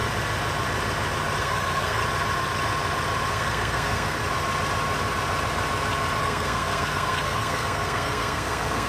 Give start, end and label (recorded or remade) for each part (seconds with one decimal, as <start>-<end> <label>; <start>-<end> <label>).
0.0-1.4 recorded; 1.4-2.0 remade; 2.0-3.3 recorded; 3.3-4.2 remade; 4.2-6.2 recorded; 6.2-8.9 remade